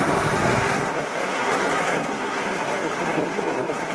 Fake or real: fake